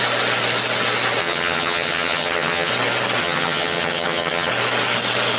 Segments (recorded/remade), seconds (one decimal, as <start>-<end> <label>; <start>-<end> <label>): 0.0-1.2 recorded; 1.2-2.7 remade; 2.7-3.2 recorded; 3.2-4.5 remade; 4.5-5.4 recorded